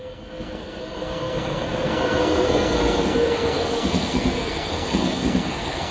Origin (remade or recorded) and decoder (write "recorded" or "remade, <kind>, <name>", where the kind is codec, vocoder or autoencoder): remade, codec, SNAC